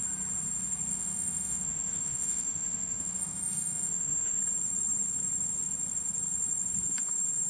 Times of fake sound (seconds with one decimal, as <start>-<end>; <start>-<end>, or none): 0.9-4.4